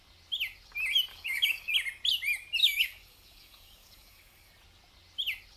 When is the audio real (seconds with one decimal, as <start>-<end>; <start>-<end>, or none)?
0.0-1.1; 1.7-2.6; 4.5-5.6